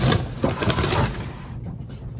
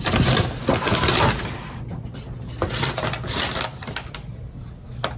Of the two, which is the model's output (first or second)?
first